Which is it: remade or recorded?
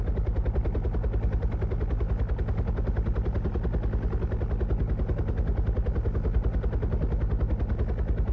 recorded